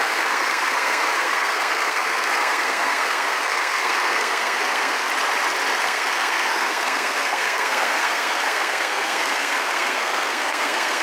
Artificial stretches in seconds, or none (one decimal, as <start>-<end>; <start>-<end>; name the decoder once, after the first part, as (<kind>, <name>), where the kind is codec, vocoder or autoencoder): 0.0-5.1 (codec, SNAC); 5.8-11.0